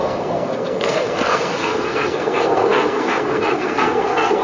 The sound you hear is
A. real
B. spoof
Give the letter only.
B